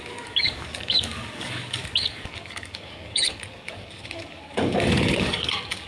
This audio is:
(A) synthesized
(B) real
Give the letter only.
A